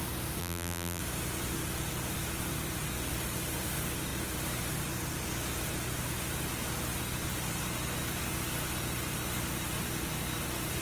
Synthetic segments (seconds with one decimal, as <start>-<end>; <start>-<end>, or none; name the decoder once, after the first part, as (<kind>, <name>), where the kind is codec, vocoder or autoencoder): 0.4-1.0 (vocoder, BigVGAN v2)